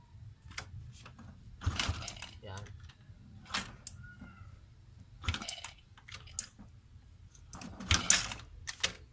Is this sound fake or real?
real